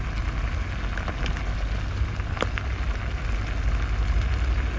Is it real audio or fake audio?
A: real